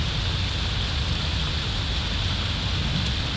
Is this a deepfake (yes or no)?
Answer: no